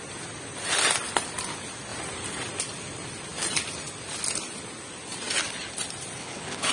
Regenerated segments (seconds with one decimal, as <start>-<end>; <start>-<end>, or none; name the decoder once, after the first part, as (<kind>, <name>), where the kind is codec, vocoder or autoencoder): 6.2-6.7 (codec, HILCodec)

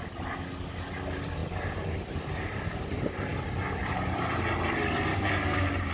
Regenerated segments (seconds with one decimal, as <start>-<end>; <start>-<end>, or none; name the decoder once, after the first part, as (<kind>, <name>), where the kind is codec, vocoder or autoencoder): 5.1-5.9 (codec, DAC)

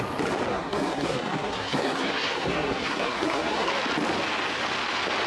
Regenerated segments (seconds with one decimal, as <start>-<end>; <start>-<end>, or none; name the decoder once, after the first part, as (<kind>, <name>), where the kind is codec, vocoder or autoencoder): 0.5-3.7 (codec, SNAC)

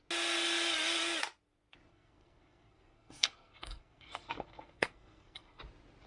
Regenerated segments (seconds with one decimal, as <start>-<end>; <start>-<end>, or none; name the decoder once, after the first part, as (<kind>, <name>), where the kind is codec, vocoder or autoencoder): 1.9-5.6 (codec, SNAC)

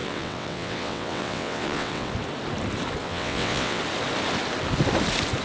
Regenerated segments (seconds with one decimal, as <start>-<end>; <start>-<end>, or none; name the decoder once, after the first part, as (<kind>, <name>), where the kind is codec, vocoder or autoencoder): 0.0-2.1 (vocoder, WaveNeXt); 3.0-3.8